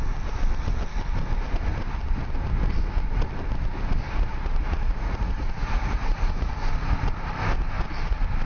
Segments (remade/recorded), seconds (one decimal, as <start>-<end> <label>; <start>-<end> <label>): 0.0-4.3 recorded; 4.3-6.5 remade; 6.5-8.5 recorded